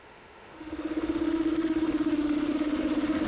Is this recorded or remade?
remade